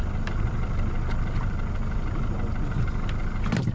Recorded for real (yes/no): yes